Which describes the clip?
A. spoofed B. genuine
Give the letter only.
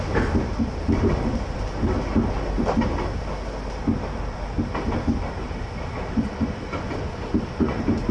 B